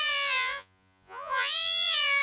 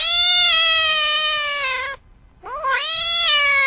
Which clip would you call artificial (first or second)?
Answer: first